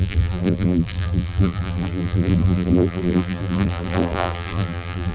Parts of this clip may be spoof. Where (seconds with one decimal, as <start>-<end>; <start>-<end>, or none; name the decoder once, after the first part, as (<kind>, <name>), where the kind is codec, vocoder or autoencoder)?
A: 0.0-5.1 (vocoder, BigVGAN v2)